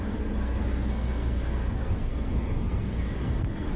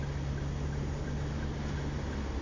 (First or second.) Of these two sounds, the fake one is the first